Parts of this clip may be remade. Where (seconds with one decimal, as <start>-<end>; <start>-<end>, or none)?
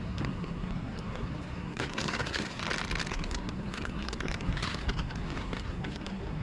0.0-2.6; 3.1-6.4